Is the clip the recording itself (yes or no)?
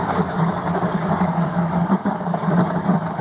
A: no